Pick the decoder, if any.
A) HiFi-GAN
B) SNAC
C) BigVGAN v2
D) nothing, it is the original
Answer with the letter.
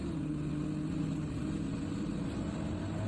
D